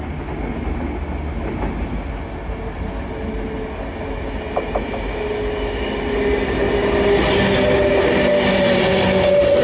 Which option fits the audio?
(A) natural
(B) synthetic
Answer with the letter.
A